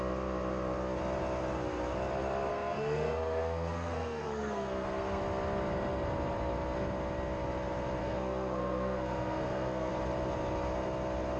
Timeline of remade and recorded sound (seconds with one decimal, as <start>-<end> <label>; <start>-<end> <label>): 0.0-2.5 recorded; 2.5-5.2 remade; 5.2-8.0 recorded; 8.0-9.9 remade; 9.9-11.4 recorded